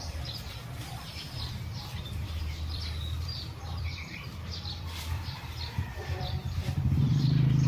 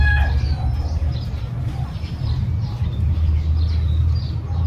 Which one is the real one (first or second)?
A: second